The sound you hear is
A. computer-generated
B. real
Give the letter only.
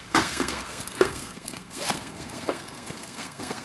A